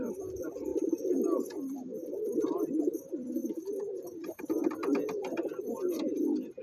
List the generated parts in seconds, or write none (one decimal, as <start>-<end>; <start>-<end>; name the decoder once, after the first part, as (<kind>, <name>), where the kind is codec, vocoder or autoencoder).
3.4-4.4 (vocoder, BigVGAN v2)